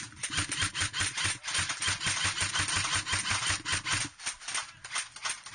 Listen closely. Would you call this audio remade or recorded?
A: recorded